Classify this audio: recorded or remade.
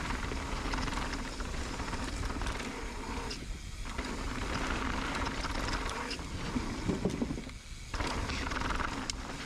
recorded